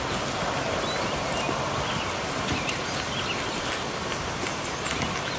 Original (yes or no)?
yes